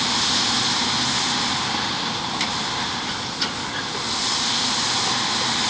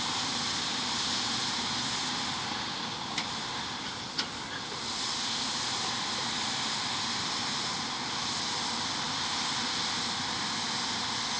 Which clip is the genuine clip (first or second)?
first